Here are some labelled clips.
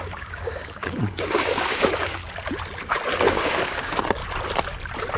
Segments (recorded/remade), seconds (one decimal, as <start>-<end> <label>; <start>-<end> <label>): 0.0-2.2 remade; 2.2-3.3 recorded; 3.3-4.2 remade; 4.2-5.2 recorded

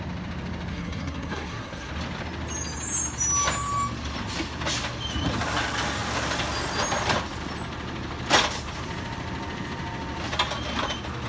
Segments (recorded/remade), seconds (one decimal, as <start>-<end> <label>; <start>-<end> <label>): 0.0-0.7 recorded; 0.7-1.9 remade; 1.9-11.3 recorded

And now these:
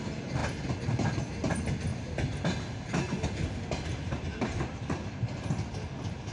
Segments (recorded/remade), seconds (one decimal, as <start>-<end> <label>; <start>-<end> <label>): 0.0-6.3 recorded

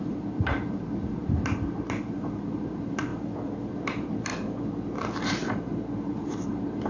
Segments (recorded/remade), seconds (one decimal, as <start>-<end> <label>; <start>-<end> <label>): 0.0-3.1 remade; 3.1-3.7 recorded; 3.7-4.3 remade; 4.3-5.3 recorded; 5.3-5.7 remade; 5.7-6.3 recorded; 6.3-6.9 remade

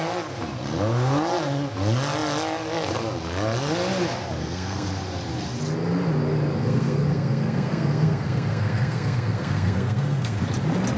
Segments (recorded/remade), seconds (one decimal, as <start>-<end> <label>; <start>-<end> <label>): 0.0-4.4 recorded; 4.4-4.9 remade; 4.9-6.6 recorded; 6.6-10.4 remade; 10.4-11.0 recorded

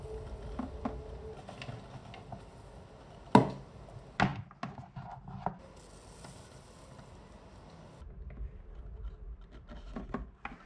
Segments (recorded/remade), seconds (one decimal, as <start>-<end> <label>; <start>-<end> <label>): 0.0-10.7 recorded